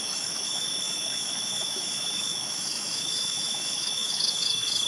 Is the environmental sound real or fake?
fake